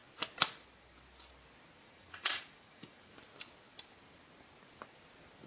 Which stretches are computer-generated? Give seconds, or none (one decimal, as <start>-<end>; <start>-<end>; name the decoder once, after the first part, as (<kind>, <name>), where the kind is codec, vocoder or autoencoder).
1.8-3.1 (vocoder, Vocos)